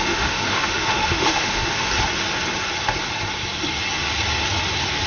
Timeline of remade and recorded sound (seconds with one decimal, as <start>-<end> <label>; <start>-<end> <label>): 0.0-1.9 remade; 1.9-5.1 recorded